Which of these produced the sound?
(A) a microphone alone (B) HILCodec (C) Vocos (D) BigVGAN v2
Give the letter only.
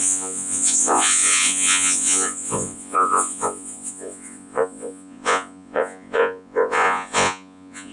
C